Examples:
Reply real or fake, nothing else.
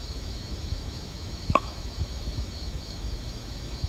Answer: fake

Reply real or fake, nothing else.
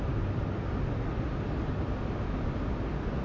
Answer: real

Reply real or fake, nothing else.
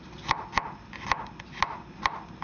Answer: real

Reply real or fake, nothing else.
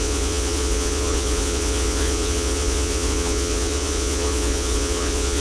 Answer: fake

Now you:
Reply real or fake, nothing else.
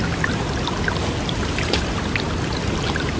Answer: real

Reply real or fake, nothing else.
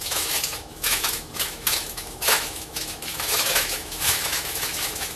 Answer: fake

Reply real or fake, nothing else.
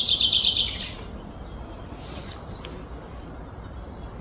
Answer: real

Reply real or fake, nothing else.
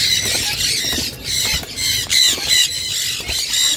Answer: real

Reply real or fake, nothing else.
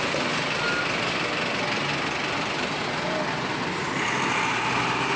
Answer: real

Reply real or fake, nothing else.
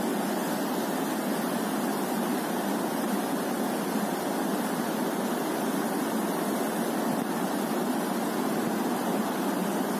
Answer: real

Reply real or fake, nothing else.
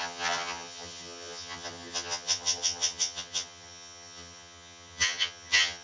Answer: fake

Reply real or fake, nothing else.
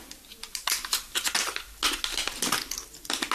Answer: real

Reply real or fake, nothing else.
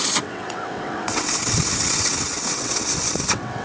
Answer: fake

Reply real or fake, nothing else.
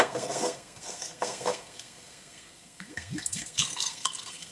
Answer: fake